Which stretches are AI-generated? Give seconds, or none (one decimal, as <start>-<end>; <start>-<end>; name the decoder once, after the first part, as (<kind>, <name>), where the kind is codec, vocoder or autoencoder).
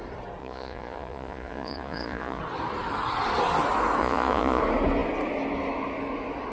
0.4-2.4 (vocoder, Vocos); 4.0-4.6